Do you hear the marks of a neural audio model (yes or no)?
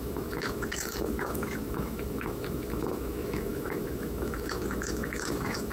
yes